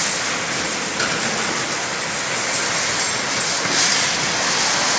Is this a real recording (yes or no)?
yes